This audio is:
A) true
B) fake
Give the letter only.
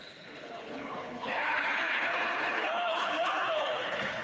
B